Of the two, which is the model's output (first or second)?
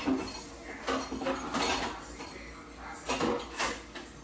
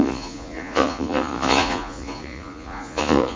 second